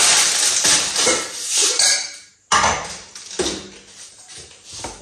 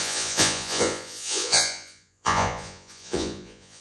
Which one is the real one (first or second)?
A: first